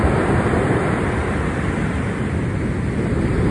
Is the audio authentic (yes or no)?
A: yes